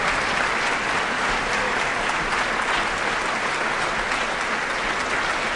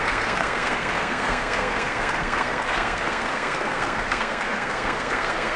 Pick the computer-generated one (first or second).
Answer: second